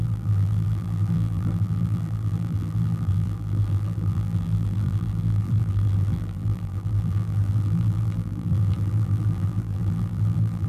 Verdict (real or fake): fake